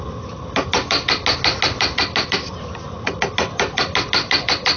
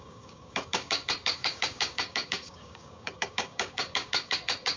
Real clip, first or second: first